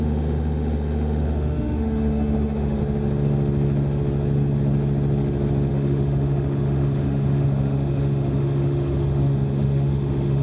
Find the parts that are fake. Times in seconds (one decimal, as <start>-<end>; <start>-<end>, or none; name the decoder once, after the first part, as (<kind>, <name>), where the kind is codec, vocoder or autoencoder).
0.0-2.8 (autoencoder, DAC-VAE); 5.7-10.4